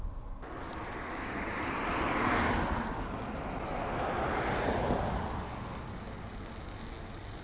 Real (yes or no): yes